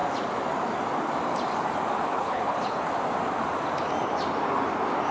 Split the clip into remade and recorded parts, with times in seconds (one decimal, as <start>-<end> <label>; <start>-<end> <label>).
0.0-2.1 recorded; 2.1-2.9 remade; 2.9-5.1 recorded